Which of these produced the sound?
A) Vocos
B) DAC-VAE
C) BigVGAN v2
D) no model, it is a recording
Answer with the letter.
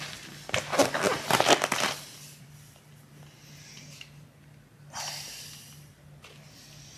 D